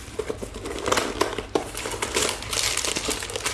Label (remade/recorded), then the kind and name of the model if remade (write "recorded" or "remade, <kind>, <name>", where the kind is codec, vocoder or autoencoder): recorded